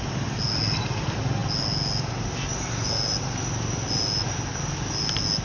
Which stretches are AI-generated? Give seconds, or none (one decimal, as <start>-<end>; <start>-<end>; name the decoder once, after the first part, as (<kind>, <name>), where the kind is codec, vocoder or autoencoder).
none